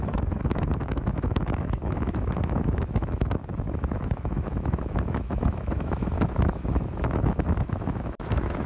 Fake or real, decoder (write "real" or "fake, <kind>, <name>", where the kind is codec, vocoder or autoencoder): fake, autoencoder, DAC-VAE